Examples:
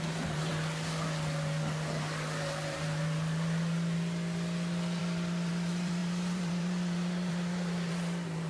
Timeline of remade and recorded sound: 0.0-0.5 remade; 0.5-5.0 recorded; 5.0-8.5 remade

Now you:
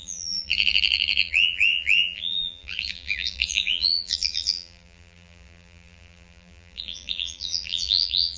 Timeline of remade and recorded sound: 0.0-8.4 remade

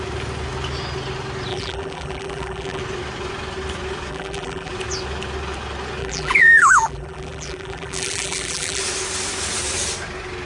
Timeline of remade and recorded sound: 0.0-1.5 recorded; 1.5-2.8 remade; 2.8-4.1 recorded; 4.1-4.7 remade; 4.7-6.0 recorded; 6.0-8.8 remade; 8.8-10.5 recorded

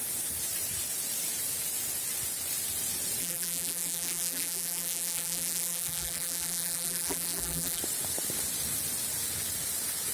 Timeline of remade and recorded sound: 0.0-3.2 recorded; 3.2-7.8 remade; 7.8-10.1 recorded

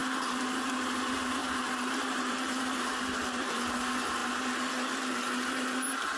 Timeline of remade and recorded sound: 0.0-1.4 recorded; 1.4-3.5 remade; 3.5-6.2 recorded

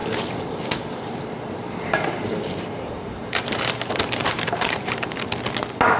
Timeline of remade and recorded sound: 0.0-1.2 remade; 1.2-1.6 recorded; 1.6-5.2 remade; 5.2-6.0 recorded

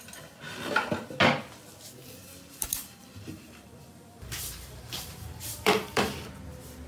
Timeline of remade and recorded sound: 0.0-2.5 recorded; 2.5-5.9 remade; 5.9-6.9 recorded